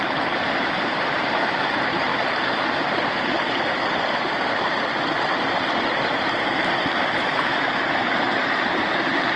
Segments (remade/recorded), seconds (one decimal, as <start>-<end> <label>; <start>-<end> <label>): 0.0-2.1 remade; 2.1-7.1 recorded; 7.1-9.4 remade